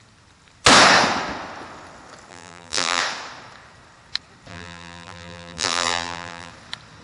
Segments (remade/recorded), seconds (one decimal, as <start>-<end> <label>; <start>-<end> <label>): 0.0-2.3 recorded; 2.3-3.0 remade; 3.0-4.5 recorded; 4.5-6.5 remade; 6.5-7.0 recorded